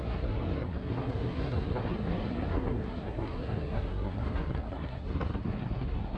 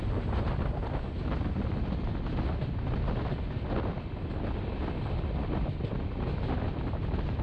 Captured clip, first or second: second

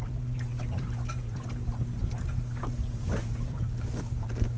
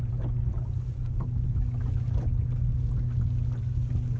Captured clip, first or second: second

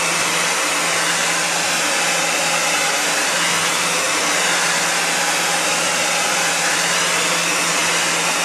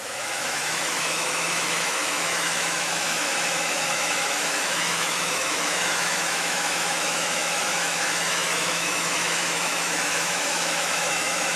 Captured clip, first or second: first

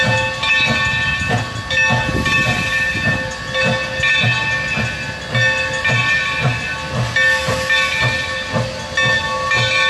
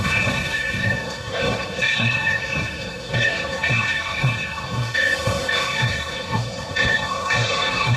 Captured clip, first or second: first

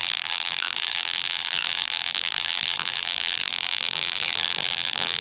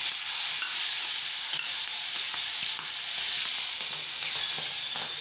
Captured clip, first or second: second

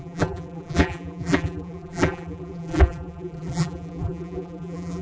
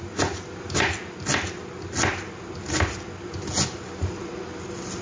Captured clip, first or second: second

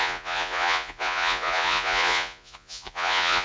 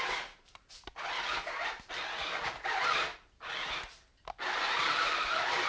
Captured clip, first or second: second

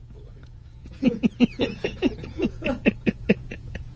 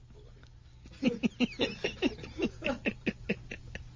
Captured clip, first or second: second